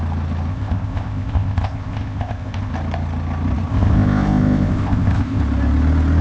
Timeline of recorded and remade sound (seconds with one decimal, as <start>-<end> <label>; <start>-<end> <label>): 0.0-0.5 recorded; 0.5-2.7 remade; 2.7-3.7 recorded; 3.7-5.4 remade; 5.4-6.2 recorded